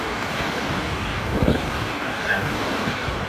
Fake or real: fake